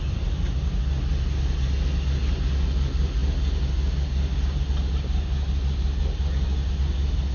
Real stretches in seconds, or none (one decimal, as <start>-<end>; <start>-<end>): 0.0-7.3